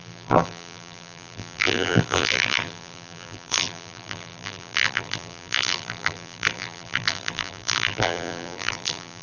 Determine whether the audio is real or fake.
fake